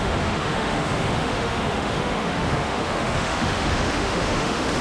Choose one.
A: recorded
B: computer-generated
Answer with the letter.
B